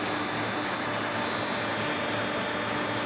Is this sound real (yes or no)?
yes